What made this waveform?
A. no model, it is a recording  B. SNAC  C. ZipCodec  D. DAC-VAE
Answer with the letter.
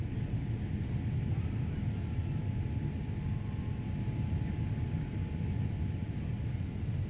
A